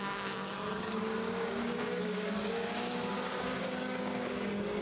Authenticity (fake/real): fake